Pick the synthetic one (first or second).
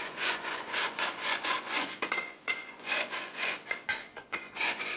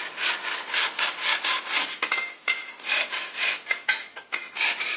first